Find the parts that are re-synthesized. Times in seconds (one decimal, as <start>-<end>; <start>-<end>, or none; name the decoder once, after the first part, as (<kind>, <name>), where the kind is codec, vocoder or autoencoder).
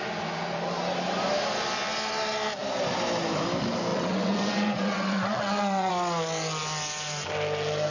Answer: 3.9-5.9 (vocoder, WaveNeXt)